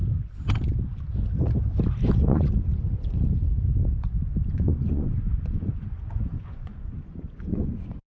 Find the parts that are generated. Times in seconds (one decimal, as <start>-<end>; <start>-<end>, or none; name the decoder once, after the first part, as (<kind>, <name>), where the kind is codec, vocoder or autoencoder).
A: 2.1-2.7 (vocoder, Vocos); 4.5-8.1